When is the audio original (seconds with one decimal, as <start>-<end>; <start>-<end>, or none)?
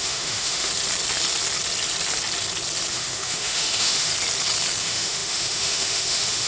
0.7-2.9; 4.1-4.8